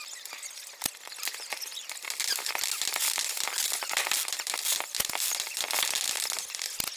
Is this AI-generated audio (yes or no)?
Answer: no